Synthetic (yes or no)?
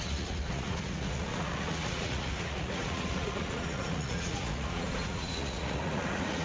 yes